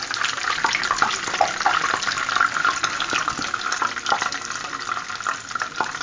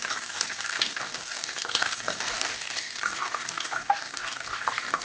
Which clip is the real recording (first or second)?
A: first